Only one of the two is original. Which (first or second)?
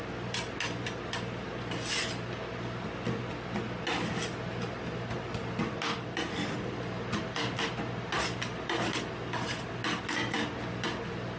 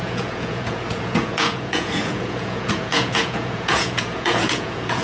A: first